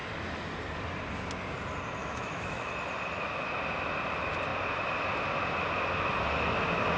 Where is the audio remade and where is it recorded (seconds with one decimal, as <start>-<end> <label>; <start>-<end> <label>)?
0.0-2.0 recorded; 2.0-2.7 remade; 2.7-7.0 recorded